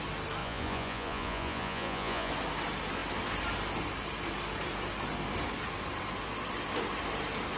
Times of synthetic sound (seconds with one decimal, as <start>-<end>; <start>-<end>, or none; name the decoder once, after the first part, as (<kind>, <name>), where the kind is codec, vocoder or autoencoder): 0.4-2.3 (vocoder, Vocos)